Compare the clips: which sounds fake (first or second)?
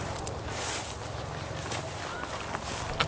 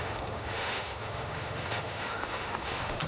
second